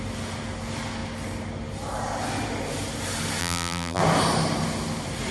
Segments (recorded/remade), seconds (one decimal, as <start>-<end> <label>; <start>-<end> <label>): 0.0-3.4 recorded; 3.4-4.0 remade; 4.0-5.3 recorded